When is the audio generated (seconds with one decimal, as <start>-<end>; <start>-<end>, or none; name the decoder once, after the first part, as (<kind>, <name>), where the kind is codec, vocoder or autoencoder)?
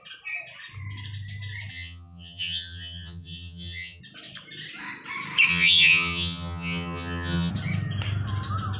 1.7-4.0 (vocoder, HiFi-GAN); 5.5-7.5